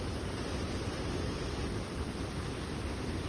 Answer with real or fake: real